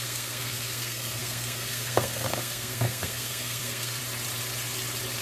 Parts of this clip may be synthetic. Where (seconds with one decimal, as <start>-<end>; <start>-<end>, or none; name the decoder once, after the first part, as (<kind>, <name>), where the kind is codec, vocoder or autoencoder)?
0.0-4.0 (codec, SNAC)